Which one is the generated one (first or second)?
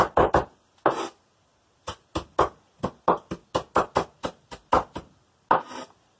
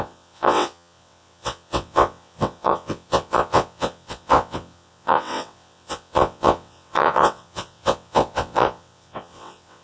second